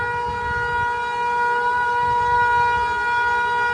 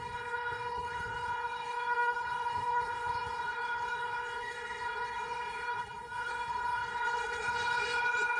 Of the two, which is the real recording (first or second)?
first